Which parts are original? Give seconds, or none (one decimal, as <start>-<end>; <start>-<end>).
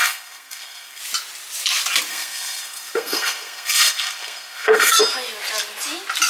1.0-2.1; 5.0-6.3